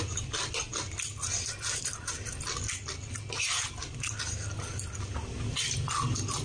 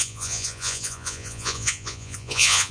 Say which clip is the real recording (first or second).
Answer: first